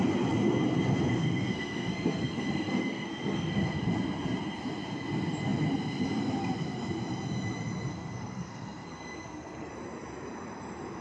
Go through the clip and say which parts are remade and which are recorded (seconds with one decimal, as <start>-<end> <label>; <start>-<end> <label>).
0.0-1.1 recorded; 1.1-3.8 remade; 3.8-7.9 recorded; 7.9-9.7 remade; 9.7-11.0 recorded